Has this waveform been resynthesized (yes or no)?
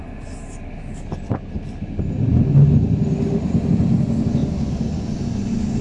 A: no